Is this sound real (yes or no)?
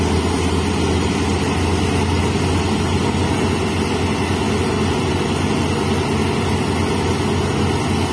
yes